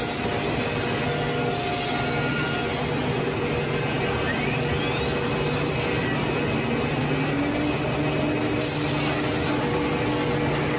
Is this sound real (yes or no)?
yes